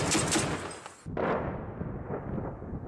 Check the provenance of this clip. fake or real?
real